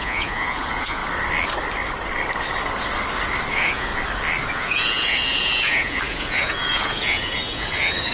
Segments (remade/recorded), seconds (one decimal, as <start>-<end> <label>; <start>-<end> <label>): 0.0-1.0 remade; 1.0-3.5 recorded; 3.5-3.9 remade; 3.9-4.5 recorded; 4.5-8.1 remade